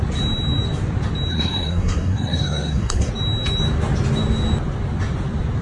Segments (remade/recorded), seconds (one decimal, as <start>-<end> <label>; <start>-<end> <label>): 0.0-1.3 recorded; 1.3-3.1 remade; 3.1-5.6 recorded